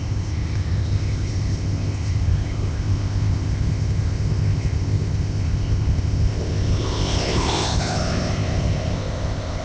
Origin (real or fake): fake